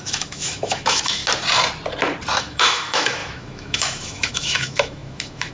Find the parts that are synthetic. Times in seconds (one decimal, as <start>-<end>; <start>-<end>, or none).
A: 0.0-1.2; 2.4-5.5